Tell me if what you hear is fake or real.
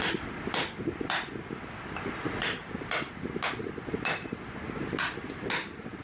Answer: real